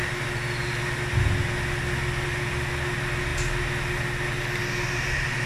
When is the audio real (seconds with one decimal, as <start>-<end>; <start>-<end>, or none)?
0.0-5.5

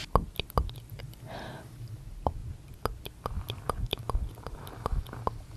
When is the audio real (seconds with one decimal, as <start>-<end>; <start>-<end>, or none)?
0.0-1.0; 2.4-4.3; 4.9-5.6

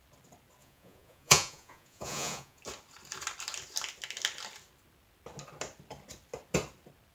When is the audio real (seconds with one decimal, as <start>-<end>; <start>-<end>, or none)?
0.0-0.6; 2.6-7.1